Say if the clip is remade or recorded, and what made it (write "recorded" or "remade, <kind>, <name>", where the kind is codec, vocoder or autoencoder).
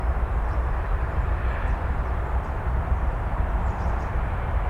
remade, vocoder, BigVGAN v2